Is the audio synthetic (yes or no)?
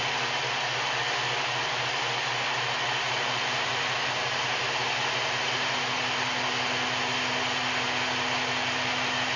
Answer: no